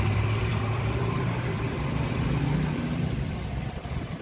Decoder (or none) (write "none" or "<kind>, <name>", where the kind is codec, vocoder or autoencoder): vocoder, BigVGAN v2